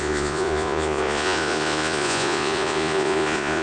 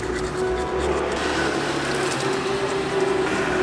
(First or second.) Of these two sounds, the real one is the second